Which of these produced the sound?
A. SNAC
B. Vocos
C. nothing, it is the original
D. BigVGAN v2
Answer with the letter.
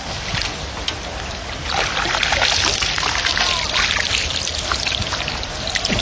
C